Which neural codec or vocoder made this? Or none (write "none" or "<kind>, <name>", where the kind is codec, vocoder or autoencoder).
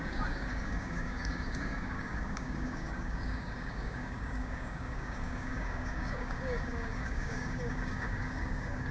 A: codec, DAC